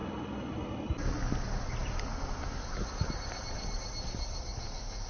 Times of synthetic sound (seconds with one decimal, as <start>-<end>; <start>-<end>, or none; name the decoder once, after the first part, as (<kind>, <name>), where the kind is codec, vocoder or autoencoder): none